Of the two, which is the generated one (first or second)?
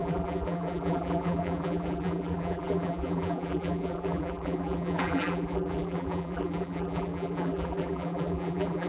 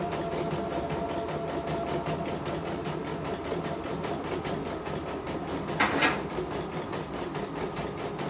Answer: first